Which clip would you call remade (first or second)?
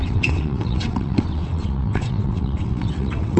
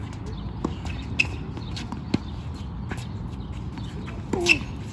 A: first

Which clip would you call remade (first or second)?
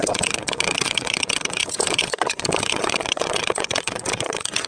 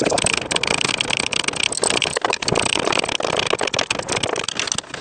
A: first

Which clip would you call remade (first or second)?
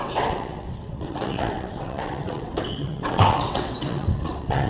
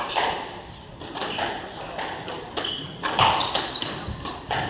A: first